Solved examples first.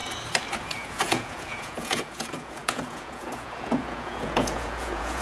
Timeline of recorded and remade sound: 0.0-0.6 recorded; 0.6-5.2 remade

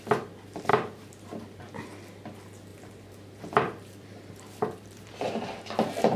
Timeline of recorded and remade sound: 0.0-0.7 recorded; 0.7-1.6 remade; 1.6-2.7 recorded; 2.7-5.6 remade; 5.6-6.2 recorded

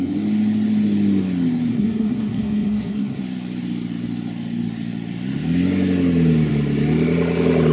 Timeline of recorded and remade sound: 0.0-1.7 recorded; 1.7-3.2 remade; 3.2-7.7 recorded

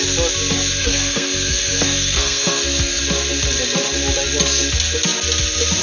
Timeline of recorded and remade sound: 0.0-0.8 recorded; 0.8-3.0 remade; 3.0-5.8 recorded